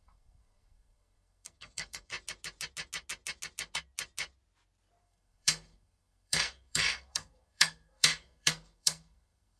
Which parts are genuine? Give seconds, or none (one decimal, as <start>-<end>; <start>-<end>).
2.1-5.0